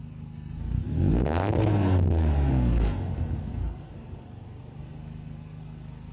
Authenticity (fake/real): fake